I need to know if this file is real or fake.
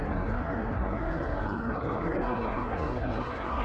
fake